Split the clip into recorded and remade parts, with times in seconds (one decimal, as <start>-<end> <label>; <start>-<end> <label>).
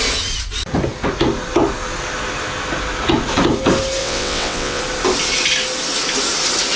0.0-4.0 recorded; 4.0-4.8 remade; 4.8-6.8 recorded